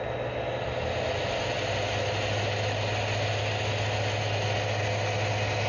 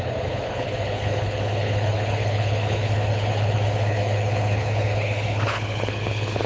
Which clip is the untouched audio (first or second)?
first